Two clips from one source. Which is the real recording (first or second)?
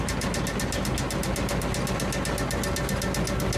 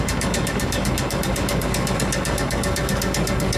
first